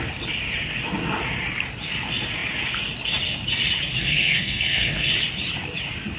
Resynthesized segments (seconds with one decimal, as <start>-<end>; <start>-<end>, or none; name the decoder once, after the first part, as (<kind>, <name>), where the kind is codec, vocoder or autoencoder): 4.0-5.1 (codec, SNAC)